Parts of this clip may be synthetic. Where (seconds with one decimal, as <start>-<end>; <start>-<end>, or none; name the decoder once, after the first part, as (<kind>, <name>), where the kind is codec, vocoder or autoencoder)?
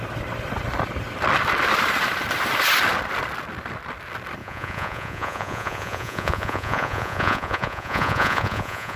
4.4-9.0 (vocoder, Vocos)